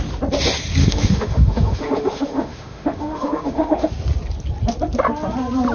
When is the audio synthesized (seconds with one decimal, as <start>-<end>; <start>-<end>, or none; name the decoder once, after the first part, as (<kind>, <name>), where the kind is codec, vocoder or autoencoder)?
0.8-3.9 (autoencoder, DAC-VAE)